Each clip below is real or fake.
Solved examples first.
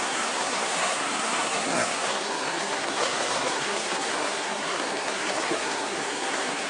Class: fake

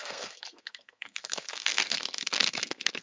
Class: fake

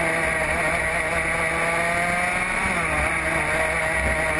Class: real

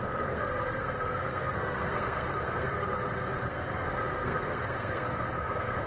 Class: fake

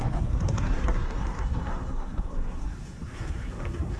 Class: fake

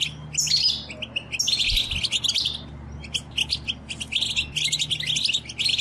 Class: real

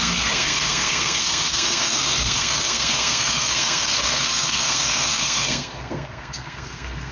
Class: fake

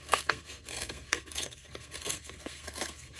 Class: fake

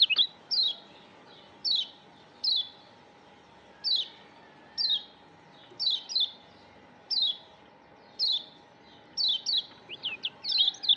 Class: real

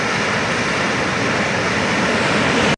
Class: real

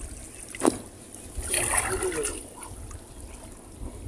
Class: real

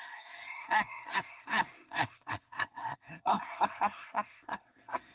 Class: fake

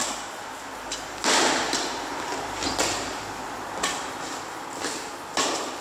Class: real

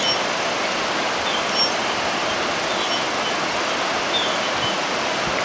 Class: real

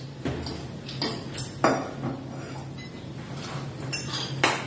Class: real